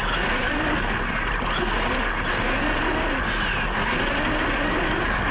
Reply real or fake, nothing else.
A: real